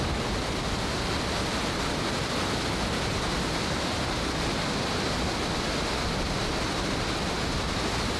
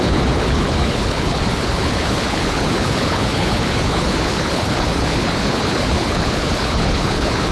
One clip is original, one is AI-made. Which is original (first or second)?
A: first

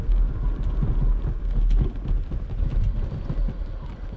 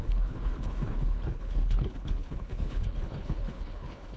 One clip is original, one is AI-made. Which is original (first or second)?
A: first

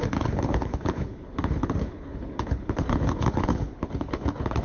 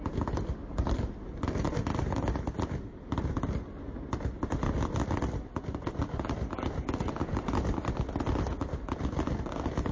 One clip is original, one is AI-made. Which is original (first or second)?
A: second